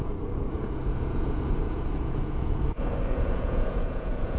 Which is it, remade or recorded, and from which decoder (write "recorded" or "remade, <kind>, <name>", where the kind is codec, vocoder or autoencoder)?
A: remade, vocoder, Vocos